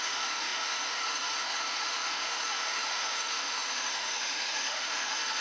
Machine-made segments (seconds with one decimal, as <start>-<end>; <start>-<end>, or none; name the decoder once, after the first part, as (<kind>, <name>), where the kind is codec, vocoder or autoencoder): 0.0-5.4 (autoencoder, DAC-VAE)